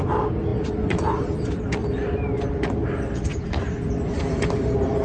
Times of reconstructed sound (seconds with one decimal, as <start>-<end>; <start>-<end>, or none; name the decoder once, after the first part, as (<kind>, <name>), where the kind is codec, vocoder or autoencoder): none